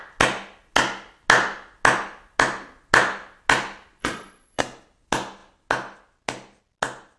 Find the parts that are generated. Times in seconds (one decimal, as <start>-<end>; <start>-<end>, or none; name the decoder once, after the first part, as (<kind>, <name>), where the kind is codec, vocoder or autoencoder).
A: 4.0-4.6 (vocoder, Vocos)

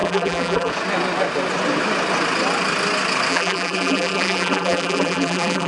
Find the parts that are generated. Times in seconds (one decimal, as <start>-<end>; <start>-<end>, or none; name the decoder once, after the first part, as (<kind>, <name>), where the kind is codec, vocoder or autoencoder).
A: 0.0-0.7 (vocoder, BigVGAN v2); 3.3-5.7

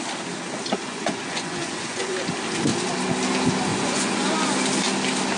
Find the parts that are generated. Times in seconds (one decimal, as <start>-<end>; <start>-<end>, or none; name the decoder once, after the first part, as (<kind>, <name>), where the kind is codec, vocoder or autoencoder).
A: 0.8-2.3 (vocoder, Vocos); 3.7-4.3

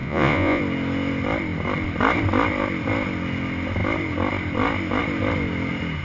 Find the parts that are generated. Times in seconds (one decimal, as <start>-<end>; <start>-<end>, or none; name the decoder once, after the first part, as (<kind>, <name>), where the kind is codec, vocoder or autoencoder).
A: 0.0-0.6 (vocoder, Vocos)